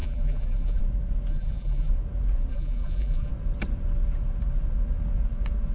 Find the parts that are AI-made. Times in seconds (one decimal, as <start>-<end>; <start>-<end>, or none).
0.0-0.8; 1.3-1.9; 2.5-3.3